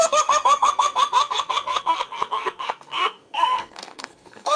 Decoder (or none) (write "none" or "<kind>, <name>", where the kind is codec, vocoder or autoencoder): codec, SNAC